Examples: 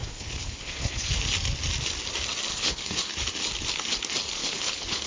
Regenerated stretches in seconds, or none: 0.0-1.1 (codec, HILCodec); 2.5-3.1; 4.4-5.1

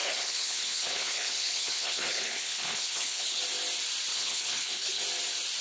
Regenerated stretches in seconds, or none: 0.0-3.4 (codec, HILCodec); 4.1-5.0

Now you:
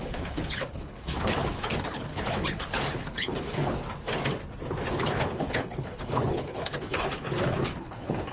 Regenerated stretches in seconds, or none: 0.0-3.8 (codec, HILCodec); 4.9-8.3

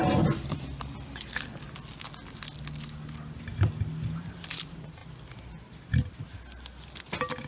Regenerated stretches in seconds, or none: none

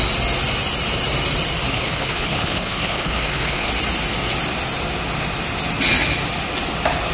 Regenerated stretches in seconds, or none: 1.7-3.7 (codec, HILCodec)